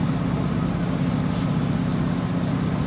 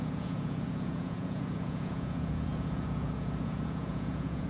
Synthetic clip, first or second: second